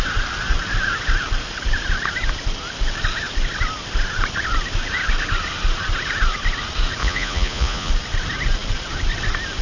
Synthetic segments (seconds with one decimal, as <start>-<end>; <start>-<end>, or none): 7.0-7.9